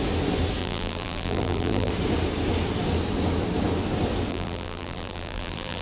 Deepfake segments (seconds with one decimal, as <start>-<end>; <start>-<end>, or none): 0.6-1.9; 4.3-5.8